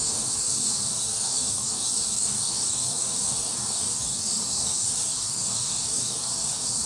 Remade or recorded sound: remade